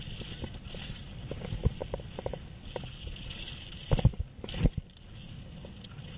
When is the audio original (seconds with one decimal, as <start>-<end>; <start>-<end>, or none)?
0.0-6.2